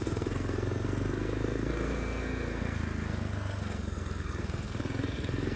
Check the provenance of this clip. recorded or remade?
remade